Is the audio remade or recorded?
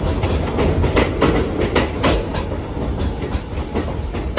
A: recorded